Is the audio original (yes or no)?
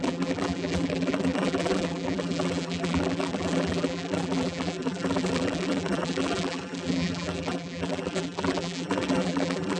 no